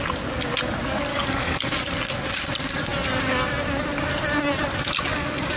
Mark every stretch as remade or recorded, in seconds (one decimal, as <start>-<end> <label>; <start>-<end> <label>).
0.0-1.1 recorded; 1.1-1.7 remade; 1.7-5.1 recorded; 5.1-5.6 remade